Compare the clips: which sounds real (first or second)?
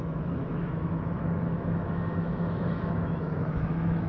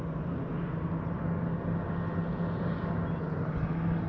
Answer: second